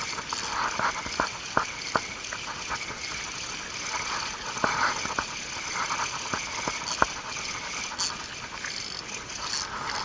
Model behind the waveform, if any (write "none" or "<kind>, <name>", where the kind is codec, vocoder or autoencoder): none